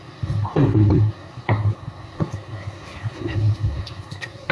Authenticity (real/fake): fake